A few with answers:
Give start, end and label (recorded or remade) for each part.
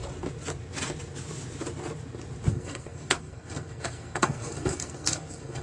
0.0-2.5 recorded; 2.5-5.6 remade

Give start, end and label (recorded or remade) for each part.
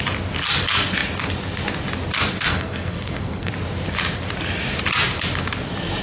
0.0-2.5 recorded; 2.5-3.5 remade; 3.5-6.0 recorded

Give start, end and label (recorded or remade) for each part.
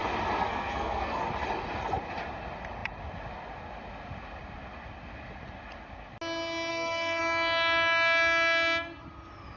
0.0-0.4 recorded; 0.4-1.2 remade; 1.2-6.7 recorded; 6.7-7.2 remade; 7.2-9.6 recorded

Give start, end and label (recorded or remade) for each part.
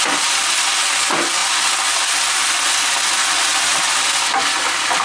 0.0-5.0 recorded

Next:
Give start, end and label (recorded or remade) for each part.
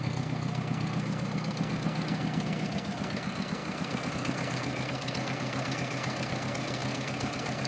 0.0-7.7 remade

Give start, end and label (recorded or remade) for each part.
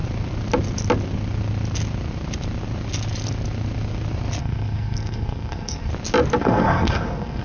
0.0-4.4 recorded; 4.4-5.9 remade; 5.9-6.4 recorded; 6.4-7.4 remade